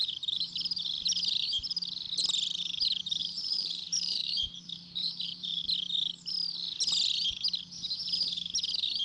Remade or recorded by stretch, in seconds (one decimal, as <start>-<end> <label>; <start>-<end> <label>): 0.0-0.5 remade; 0.5-3.2 recorded; 3.2-5.6 remade; 5.6-9.0 recorded